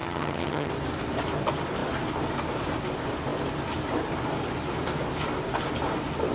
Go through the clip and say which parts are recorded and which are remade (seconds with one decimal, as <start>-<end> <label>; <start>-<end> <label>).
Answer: 0.0-0.7 remade; 0.7-6.3 recorded

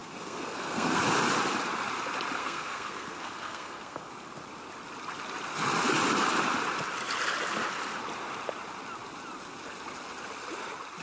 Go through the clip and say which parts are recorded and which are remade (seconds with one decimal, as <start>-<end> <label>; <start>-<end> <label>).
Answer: 0.0-1.0 remade; 1.0-2.4 recorded; 2.4-4.1 remade; 4.1-11.0 recorded